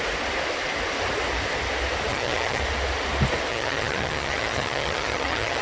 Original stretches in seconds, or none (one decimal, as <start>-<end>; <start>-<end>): 0.0-2.1; 2.6-3.5